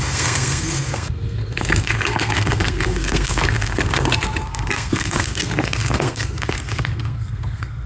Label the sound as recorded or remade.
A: remade